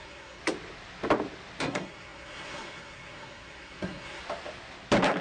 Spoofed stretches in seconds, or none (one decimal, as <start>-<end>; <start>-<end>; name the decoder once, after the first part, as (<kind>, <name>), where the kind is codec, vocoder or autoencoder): 0.0-0.4 (codec, SNAC); 1.6-4.2